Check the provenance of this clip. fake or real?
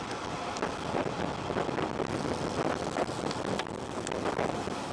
real